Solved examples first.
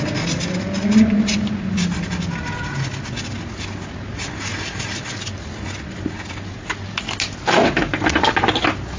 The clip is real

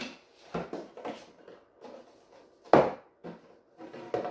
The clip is real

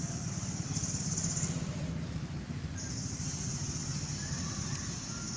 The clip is real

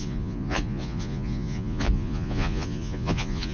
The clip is fake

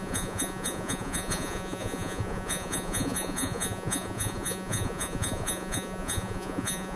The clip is fake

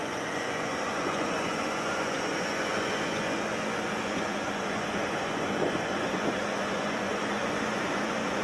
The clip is fake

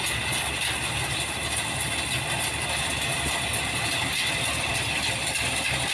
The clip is real